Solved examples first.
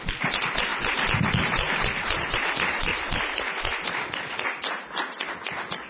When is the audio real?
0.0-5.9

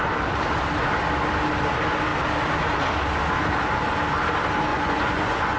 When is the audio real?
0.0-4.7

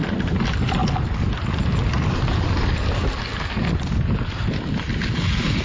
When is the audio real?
0.0-5.6